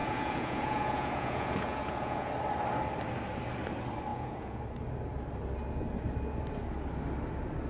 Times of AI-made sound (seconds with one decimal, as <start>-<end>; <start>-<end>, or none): 0.0-2.3; 4.1-4.6